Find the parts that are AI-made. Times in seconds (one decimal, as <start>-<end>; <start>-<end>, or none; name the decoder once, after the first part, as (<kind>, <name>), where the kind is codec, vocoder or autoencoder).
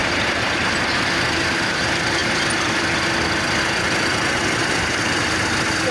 0.0-1.8 (vocoder, BigVGAN v2); 4.6-5.4